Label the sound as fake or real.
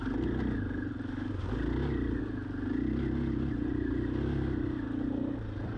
real